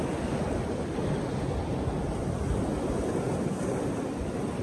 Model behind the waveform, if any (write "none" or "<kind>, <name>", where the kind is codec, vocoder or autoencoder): none